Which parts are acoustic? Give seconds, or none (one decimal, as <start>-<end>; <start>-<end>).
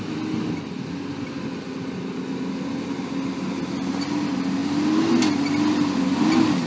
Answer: 0.0-6.7